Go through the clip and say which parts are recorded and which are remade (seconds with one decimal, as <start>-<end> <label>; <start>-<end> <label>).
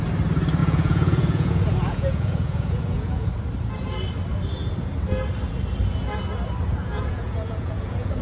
0.0-0.6 recorded; 0.6-3.3 remade; 3.3-6.8 recorded; 6.8-8.2 remade